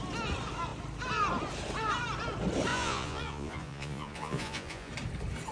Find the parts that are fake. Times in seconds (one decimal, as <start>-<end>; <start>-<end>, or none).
2.7-4.9